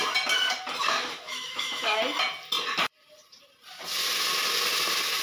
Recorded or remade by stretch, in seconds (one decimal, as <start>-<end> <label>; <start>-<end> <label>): 0.0-0.8 recorded; 0.8-2.0 remade; 2.0-5.2 recorded